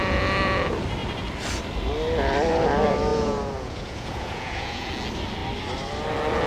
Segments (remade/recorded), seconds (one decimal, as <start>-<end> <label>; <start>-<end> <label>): 0.0-3.1 recorded; 3.1-4.9 remade; 4.9-6.5 recorded